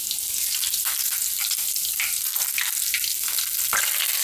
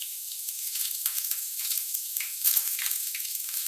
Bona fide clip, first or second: first